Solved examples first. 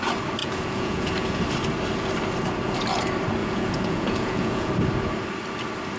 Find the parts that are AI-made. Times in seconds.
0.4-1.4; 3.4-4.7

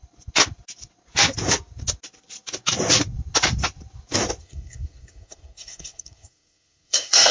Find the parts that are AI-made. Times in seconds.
4.4-7.3

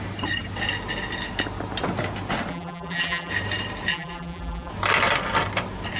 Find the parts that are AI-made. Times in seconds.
2.5-3.3; 3.9-4.7

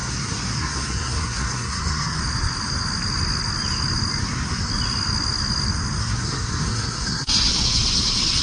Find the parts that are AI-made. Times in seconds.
0.0-2.2; 4.2-4.7; 6.0-7.5

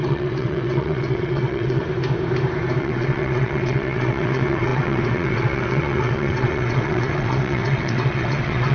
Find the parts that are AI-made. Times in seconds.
0.0-1.8; 2.8-8.7